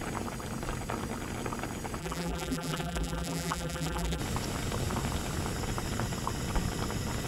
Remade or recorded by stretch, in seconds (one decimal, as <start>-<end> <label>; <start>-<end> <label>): 0.0-2.0 recorded; 2.0-4.2 remade; 4.2-7.3 recorded